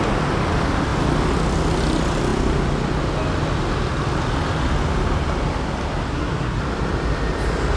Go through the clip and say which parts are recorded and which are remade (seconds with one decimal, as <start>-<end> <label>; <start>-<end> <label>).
0.0-6.1 recorded; 6.1-6.6 remade; 6.6-7.8 recorded